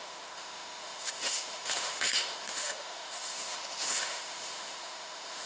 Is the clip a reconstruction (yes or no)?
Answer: yes